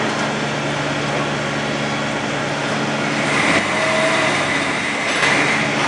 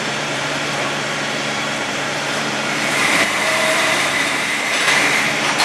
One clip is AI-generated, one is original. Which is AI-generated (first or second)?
second